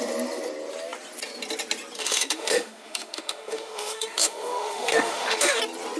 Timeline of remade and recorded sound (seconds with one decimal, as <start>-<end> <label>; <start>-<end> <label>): 0.0-2.0 recorded; 2.0-5.6 remade; 5.6-6.0 recorded

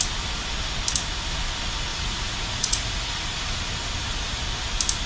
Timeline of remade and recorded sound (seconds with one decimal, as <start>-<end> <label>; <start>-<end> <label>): 0.0-1.9 recorded; 1.9-3.6 remade; 3.6-5.1 recorded

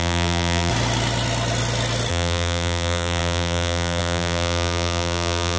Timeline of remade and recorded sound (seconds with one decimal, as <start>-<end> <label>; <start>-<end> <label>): 0.0-0.7 remade; 0.7-2.1 recorded; 2.1-5.6 remade

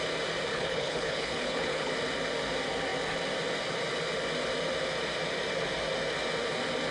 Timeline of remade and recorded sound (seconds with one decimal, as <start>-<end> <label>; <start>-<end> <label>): 0.0-0.5 recorded; 0.5-1.9 remade; 1.9-6.9 recorded

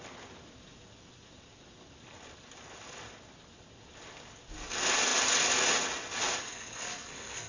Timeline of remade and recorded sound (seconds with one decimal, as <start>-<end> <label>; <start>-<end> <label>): 0.0-6.4 recorded; 6.4-7.5 remade

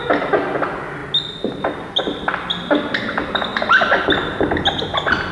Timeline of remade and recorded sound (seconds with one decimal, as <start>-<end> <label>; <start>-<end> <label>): 0.0-5.3 recorded

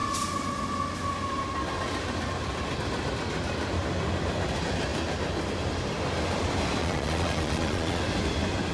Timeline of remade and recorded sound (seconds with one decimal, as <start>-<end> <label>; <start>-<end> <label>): 0.0-6.8 recorded; 6.8-8.0 remade; 8.0-8.7 recorded